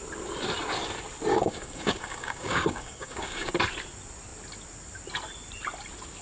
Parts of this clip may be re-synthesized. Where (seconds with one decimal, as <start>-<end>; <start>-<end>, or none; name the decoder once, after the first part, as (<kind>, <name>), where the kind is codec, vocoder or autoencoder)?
1.3-3.5 (codec, DAC)